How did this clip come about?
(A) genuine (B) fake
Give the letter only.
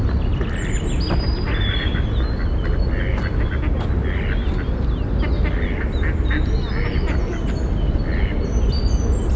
A